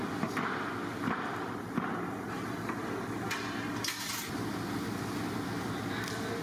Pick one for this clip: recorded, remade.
recorded